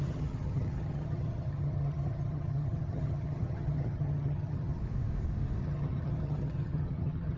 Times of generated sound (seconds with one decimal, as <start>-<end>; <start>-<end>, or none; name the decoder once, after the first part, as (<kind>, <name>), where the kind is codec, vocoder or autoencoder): 0.0-4.8 (vocoder, HiFi-GAN); 5.6-7.4